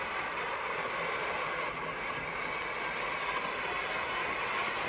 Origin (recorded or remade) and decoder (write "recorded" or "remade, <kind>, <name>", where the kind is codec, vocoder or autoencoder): recorded